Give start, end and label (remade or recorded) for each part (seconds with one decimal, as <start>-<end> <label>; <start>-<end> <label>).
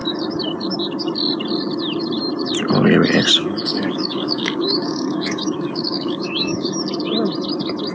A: 0.0-3.4 recorded; 3.4-6.7 remade; 6.7-7.9 recorded